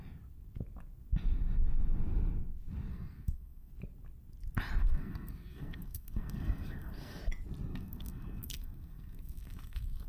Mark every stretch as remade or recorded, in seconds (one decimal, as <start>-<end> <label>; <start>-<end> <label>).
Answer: 0.0-2.9 recorded; 2.9-3.7 remade; 3.7-4.8 recorded; 4.8-7.2 remade; 7.2-7.7 recorded; 7.7-10.1 remade

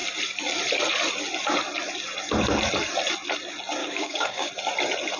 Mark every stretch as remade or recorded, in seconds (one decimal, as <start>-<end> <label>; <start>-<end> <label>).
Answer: 0.0-3.8 recorded; 3.8-4.5 remade; 4.5-5.2 recorded

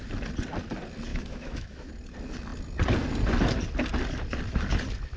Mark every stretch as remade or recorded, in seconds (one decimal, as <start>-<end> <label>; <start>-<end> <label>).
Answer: 0.0-1.1 recorded; 1.1-1.9 remade; 1.9-5.2 recorded